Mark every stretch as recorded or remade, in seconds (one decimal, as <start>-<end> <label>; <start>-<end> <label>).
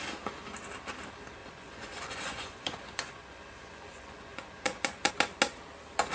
0.0-1.4 recorded; 1.4-5.1 remade; 5.1-6.1 recorded